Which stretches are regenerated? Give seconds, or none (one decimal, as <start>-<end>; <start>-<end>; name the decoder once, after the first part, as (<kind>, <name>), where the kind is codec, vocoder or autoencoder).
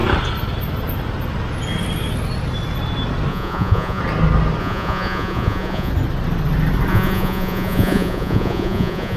3.3-4.0 (vocoder, Vocos); 4.6-5.9; 6.9-9.2